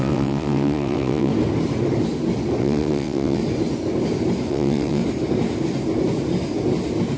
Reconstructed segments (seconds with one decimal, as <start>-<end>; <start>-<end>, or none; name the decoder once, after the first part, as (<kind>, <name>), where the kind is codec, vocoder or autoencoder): 0.0-1.3 (vocoder, WaveNeXt); 2.6-3.4; 4.5-5.0